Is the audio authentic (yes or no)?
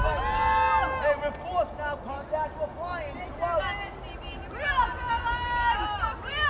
yes